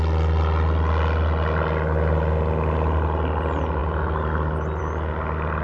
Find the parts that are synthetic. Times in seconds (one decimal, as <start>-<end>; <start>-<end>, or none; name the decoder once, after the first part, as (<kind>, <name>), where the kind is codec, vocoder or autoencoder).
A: none